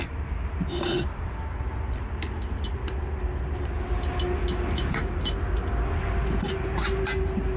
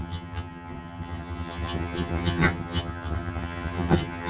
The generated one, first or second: second